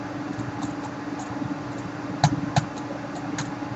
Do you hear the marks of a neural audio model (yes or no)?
no